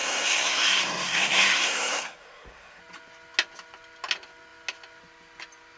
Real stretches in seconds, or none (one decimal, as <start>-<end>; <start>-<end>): 2.8-5.8